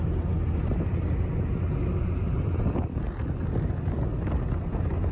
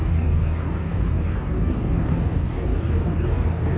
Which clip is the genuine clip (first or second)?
first